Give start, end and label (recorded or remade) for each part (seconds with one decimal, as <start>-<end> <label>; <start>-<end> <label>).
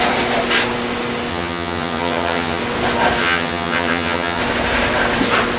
0.0-1.3 recorded; 1.3-2.6 remade; 2.6-3.2 recorded; 3.2-4.4 remade; 4.4-5.6 recorded